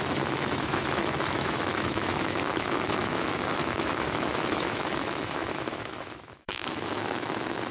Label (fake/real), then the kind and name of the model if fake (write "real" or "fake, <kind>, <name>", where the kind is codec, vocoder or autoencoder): fake, autoencoder, DAC-VAE